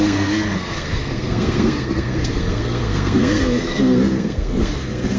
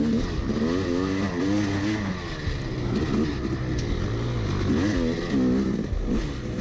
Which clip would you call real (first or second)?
second